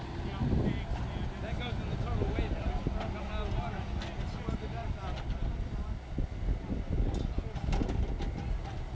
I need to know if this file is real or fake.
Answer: real